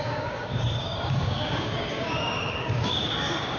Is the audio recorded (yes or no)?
no